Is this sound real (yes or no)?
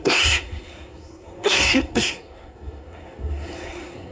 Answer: no